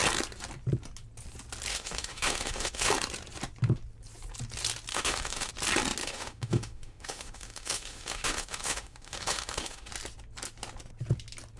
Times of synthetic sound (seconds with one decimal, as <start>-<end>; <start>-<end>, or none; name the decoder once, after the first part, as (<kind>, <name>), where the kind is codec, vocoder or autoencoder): 1.7-2.9 (autoencoder, DAC-VAE); 4.9-5.5; 6.0-9.9